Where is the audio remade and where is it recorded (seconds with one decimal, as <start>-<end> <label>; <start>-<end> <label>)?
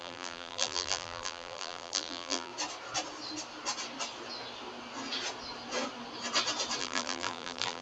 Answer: 0.0-2.5 remade; 2.5-6.8 recorded; 6.8-7.8 remade